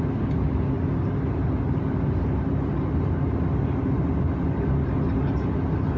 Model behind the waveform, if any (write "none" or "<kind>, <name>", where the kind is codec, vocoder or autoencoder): none